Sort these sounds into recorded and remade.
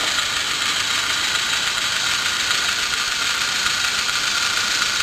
remade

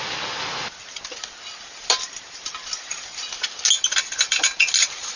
recorded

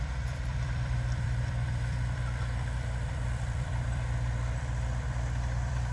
remade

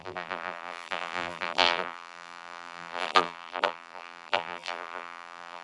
remade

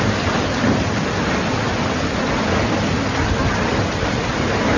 recorded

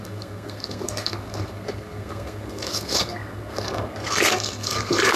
remade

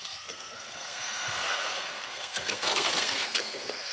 remade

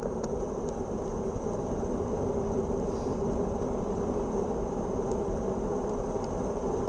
recorded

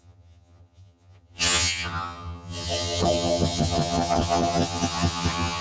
remade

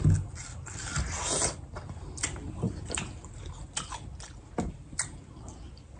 recorded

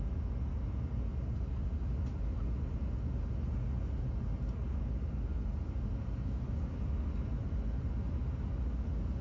recorded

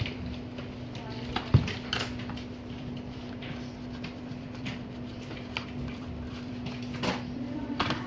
remade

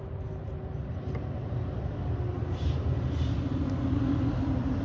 recorded